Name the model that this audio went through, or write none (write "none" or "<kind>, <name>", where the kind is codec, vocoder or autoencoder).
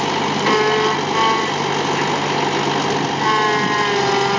none